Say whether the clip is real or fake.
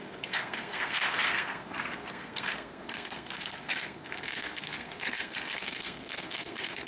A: fake